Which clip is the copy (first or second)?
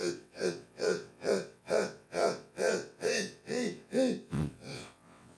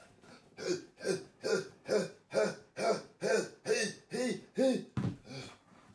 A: first